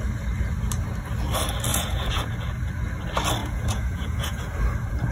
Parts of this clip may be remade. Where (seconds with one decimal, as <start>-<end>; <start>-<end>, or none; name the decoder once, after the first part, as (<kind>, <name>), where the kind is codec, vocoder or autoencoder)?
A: 1.7-2.3 (vocoder, Vocos); 3.4-4.4